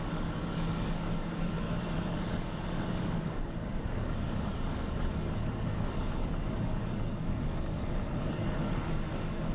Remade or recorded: remade